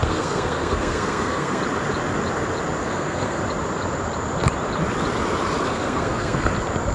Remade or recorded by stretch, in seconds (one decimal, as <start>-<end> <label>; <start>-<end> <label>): 0.0-1.6 remade; 1.6-2.8 recorded; 2.8-3.4 remade; 3.4-5.7 recorded; 5.7-6.5 remade; 6.5-6.9 recorded